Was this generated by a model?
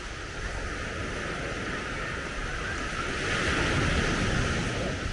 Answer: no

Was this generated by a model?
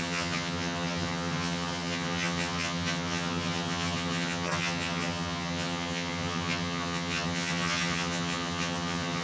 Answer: yes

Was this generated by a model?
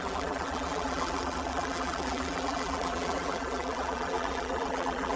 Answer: yes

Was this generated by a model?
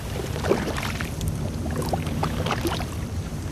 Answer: yes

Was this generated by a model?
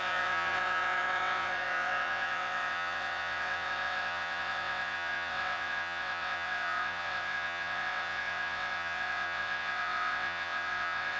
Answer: yes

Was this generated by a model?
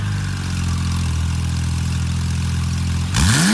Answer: no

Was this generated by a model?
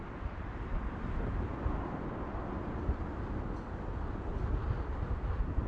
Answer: no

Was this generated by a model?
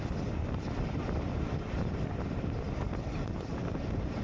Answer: yes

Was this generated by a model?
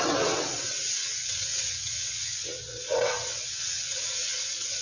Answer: yes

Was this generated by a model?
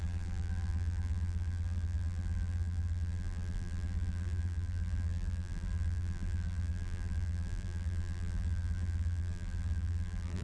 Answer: yes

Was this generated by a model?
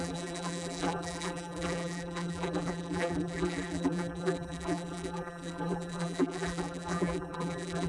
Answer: yes